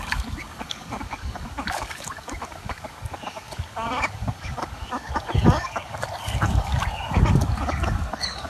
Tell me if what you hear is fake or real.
fake